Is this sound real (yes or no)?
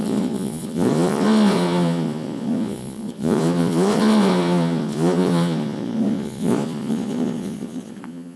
no